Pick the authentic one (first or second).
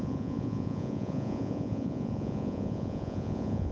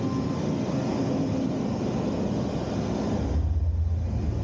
second